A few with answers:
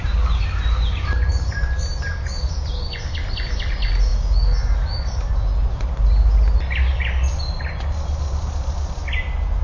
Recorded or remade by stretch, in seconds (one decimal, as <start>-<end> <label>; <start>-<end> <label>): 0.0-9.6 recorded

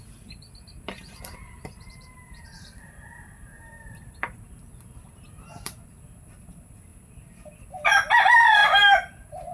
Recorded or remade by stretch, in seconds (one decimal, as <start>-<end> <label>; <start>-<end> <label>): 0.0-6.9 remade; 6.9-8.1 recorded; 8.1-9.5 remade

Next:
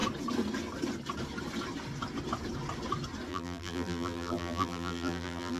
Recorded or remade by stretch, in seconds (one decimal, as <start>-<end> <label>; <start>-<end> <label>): 0.0-3.3 recorded; 3.3-5.6 remade

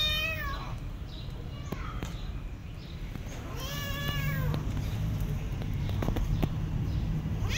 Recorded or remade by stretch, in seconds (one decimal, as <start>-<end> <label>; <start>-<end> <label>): 0.0-0.6 recorded; 0.6-1.9 remade; 1.9-2.6 recorded; 2.6-3.4 remade; 3.4-5.5 recorded; 5.5-7.6 remade

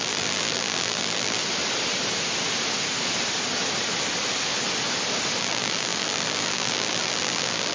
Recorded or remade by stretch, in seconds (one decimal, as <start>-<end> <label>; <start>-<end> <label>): 0.0-1.4 remade; 1.4-5.4 recorded; 5.4-7.7 remade

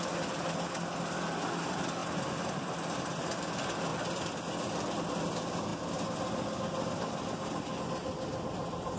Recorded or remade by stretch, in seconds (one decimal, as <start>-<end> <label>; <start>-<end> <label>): 0.0-9.0 recorded